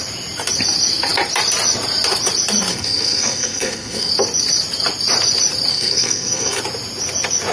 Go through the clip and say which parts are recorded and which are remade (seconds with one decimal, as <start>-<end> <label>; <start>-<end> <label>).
0.0-2.7 recorded; 2.7-4.1 remade; 4.1-5.7 recorded; 5.7-6.6 remade; 6.6-7.5 recorded